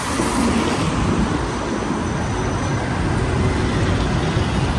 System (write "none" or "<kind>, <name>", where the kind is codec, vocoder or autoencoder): none